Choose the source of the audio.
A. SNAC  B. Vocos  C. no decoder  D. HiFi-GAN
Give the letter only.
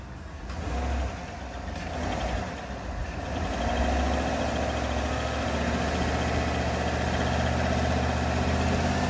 C